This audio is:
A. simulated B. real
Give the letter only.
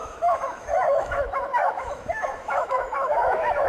A